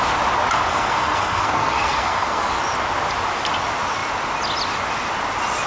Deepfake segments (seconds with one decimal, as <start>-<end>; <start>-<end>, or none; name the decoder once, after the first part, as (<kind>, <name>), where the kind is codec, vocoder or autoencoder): 0.7-2.5 (codec, SNAC)